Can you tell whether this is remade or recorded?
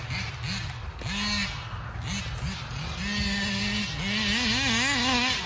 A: recorded